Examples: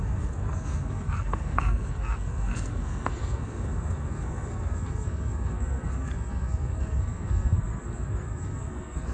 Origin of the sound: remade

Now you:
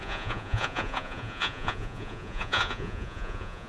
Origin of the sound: remade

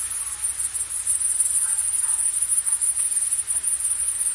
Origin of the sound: recorded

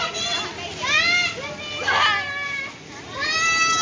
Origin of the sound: recorded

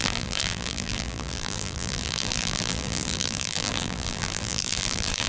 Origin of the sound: remade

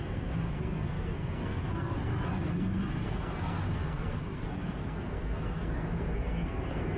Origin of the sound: remade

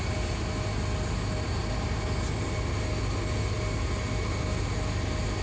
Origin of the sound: recorded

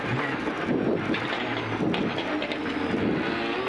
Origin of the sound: recorded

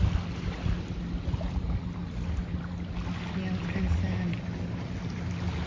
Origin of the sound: recorded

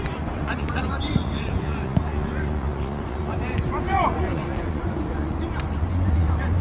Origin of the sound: remade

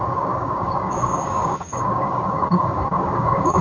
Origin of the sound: remade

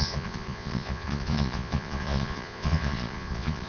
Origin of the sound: remade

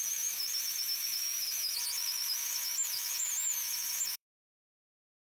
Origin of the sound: remade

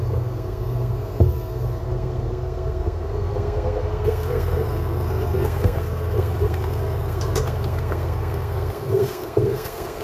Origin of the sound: remade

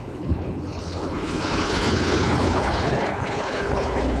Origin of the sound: remade